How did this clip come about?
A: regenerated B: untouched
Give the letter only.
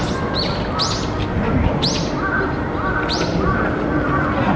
B